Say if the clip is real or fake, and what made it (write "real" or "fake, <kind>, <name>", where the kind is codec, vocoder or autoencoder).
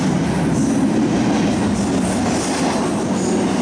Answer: real